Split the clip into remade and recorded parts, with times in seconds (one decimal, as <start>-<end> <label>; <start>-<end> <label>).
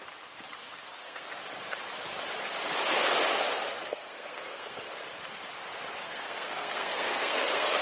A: 0.0-0.6 recorded; 0.6-1.3 remade; 1.3-3.9 recorded; 3.9-4.8 remade; 4.8-6.0 recorded; 6.0-7.8 remade